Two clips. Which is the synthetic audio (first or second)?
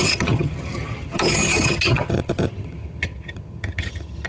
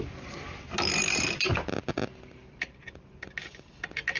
first